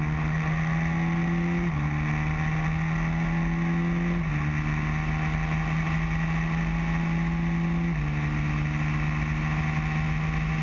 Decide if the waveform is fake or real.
real